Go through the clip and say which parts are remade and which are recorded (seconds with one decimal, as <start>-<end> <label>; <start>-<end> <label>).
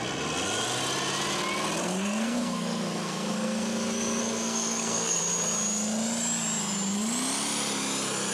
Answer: 0.0-1.8 recorded; 1.8-5.2 remade; 5.2-8.3 recorded